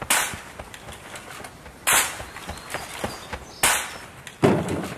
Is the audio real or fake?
real